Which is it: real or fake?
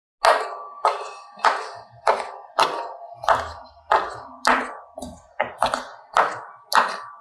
real